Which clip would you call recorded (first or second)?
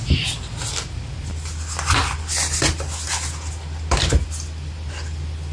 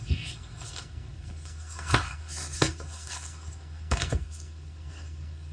first